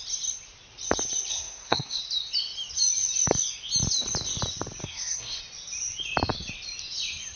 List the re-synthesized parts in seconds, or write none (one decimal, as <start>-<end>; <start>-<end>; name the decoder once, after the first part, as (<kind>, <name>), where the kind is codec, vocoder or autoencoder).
1.3-2.0 (codec, SNAC); 4.8-5.4